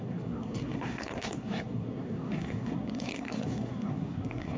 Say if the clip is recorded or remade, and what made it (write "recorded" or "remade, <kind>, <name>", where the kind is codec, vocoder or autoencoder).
remade, codec, SNAC